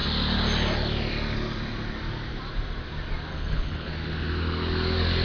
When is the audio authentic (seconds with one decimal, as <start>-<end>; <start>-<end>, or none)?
0.0-3.3; 3.9-5.2